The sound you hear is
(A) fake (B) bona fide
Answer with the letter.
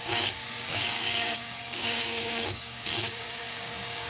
A